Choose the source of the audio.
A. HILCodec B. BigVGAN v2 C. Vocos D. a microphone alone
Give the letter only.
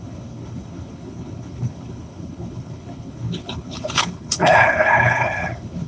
A